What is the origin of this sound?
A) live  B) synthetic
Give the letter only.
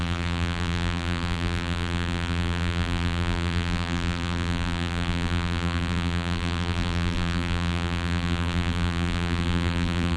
B